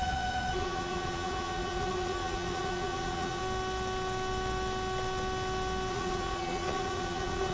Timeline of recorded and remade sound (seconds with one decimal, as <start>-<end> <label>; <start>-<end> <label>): 0.0-3.4 remade; 3.4-5.9 recorded; 5.9-7.5 remade